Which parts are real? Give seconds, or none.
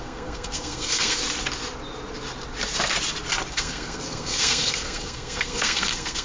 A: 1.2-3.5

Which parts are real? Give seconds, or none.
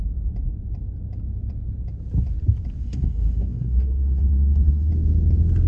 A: 0.0-2.8; 4.9-5.7